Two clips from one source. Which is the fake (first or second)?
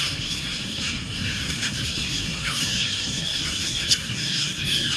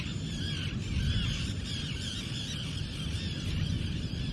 first